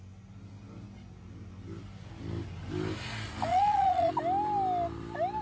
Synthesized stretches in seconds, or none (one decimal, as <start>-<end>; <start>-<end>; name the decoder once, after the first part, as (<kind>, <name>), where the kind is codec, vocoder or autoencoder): 3.5-4.1 (vocoder, Vocos)